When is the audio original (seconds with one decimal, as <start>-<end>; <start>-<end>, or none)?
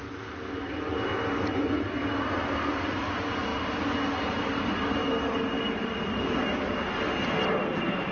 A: 0.0-8.1